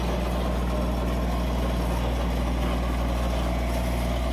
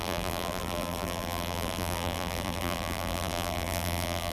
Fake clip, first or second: second